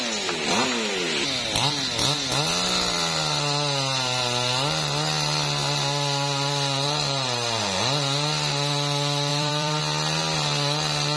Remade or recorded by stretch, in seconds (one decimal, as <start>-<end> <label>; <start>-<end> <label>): 0.0-9.3 recorded; 9.3-9.8 remade; 9.8-11.2 recorded